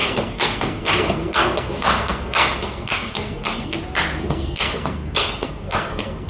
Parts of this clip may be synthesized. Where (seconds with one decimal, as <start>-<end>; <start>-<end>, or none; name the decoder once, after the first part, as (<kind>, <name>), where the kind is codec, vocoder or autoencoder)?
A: 0.0-3.8 (codec, SNAC); 4.2-6.3